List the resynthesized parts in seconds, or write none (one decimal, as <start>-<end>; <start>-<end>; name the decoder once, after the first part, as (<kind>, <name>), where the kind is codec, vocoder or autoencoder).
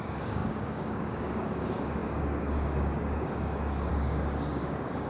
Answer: 0.0-5.1 (codec, DAC)